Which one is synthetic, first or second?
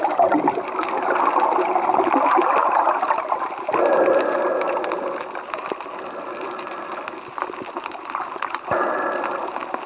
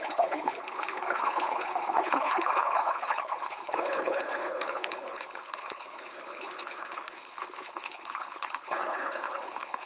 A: second